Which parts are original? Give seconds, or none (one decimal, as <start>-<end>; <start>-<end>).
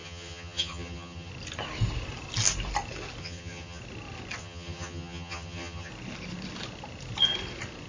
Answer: 1.3-3.2; 3.8-4.4; 5.9-7.9